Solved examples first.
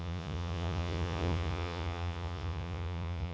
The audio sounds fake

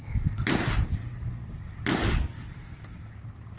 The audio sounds real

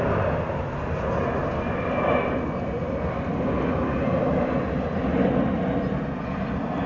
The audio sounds real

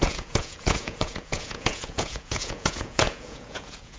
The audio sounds fake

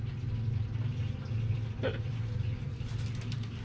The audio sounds real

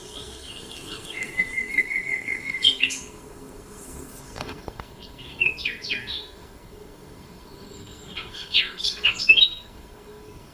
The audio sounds fake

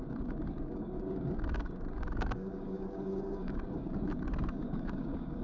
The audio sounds fake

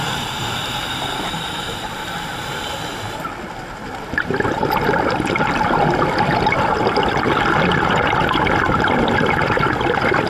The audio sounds fake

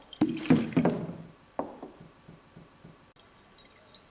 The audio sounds real